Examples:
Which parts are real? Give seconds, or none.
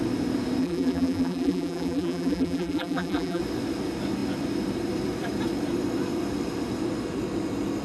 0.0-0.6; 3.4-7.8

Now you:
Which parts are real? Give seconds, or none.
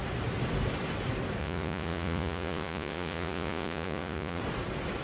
0.0-1.4; 4.4-5.0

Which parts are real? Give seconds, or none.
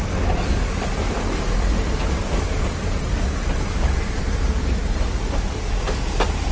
0.0-6.5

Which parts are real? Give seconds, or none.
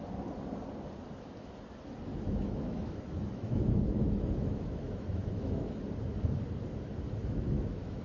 0.0-2.1; 5.8-7.2